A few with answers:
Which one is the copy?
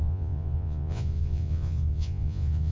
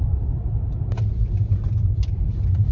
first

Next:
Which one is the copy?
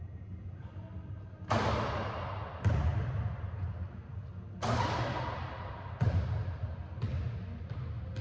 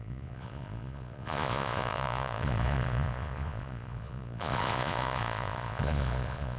second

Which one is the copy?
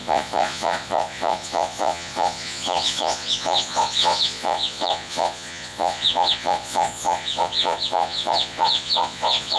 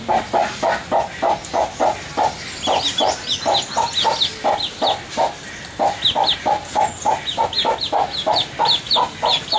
first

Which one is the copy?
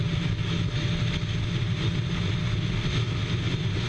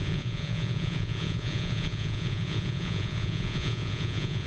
second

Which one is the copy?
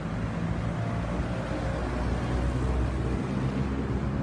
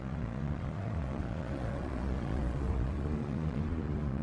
second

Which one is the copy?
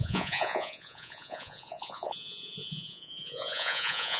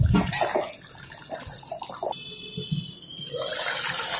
first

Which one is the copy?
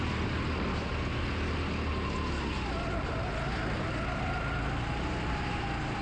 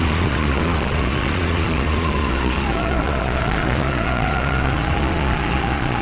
second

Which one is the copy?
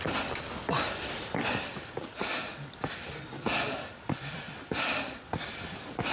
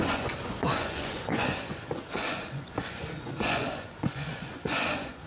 second